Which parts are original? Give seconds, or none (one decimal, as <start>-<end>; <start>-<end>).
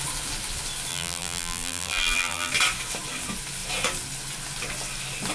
0.0-0.9; 2.5-5.3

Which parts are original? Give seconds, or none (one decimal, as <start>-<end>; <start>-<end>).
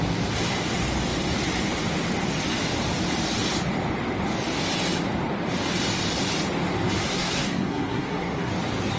0.0-7.0; 8.5-9.0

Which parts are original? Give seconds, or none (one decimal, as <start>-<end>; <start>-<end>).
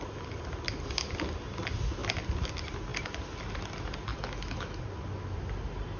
0.0-4.1; 4.8-6.0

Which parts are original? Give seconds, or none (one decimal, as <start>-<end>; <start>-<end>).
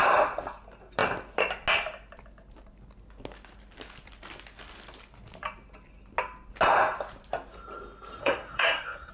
0.0-8.2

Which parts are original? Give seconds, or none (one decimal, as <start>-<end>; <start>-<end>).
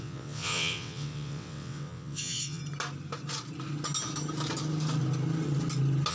2.6-6.1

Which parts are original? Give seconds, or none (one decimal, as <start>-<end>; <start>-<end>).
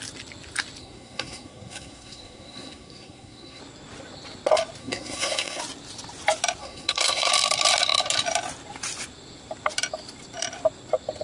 0.0-0.8; 3.6-4.8; 5.6-6.6; 7.3-11.2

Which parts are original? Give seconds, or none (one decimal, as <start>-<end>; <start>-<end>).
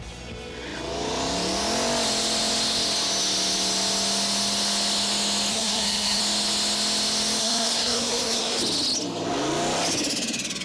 0.0-5.5; 6.2-7.4; 8.6-10.6